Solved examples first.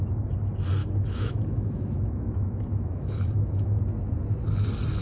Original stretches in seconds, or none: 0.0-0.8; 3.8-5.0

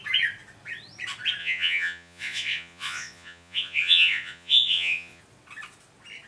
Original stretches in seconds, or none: 0.0-1.4; 5.2-6.3

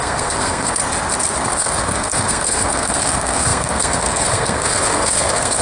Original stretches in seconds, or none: 0.8-1.4